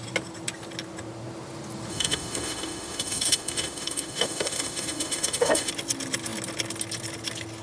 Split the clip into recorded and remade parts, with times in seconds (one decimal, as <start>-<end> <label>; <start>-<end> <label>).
0.0-1.9 recorded; 1.9-5.7 remade; 5.7-7.6 recorded